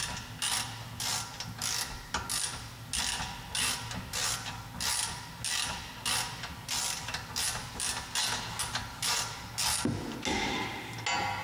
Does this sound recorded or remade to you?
recorded